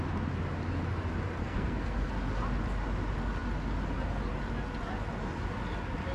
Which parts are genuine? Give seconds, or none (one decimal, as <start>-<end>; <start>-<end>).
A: 0.0-1.4; 2.1-6.1